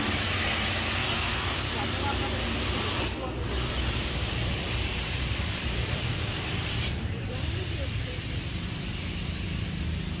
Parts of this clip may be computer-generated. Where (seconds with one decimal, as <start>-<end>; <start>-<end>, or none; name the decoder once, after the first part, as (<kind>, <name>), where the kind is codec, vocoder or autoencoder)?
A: 1.0-1.8 (vocoder, BigVGAN v2); 4.0-9.1